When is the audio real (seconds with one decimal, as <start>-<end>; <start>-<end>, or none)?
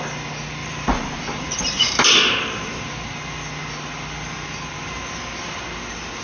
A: 0.0-0.6; 2.9-6.2